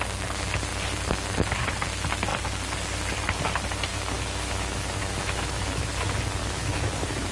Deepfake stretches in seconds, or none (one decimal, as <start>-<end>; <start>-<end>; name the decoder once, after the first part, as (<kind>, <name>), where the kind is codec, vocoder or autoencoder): 3.9-5.9 (autoencoder, DAC-VAE); 6.4-7.3